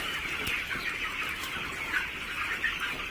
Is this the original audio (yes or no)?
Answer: yes